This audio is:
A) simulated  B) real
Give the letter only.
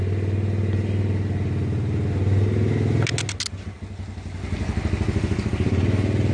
B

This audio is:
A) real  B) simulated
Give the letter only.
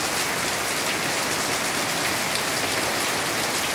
A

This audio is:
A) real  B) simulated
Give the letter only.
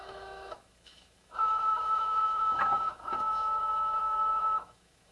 B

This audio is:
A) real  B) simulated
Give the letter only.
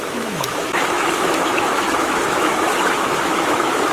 B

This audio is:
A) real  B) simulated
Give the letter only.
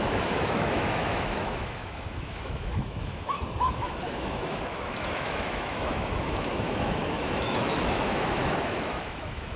B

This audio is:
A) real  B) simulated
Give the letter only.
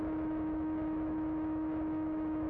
B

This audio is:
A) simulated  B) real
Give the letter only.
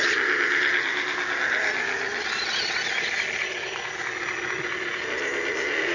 B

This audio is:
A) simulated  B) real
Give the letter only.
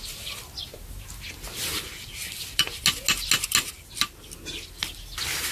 B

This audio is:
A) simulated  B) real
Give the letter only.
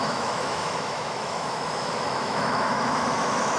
A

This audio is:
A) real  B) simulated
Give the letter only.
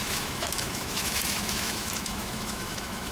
B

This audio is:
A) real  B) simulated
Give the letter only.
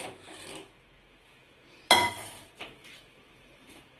B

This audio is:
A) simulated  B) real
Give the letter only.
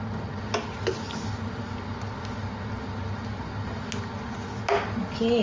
B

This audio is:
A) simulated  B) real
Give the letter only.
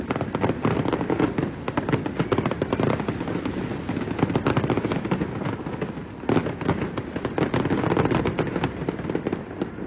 B